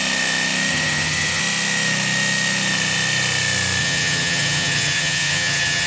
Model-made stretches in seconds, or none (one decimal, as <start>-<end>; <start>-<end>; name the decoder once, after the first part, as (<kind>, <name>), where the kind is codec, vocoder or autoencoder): 0.7-1.4 (vocoder, HiFi-GAN); 3.8-5.9